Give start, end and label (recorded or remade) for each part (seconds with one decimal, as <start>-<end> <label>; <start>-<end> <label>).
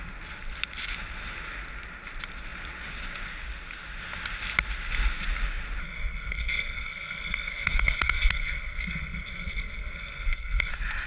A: 0.0-5.8 recorded; 5.8-10.7 remade; 10.7-11.1 recorded